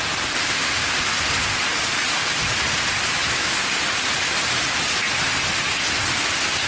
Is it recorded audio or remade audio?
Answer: recorded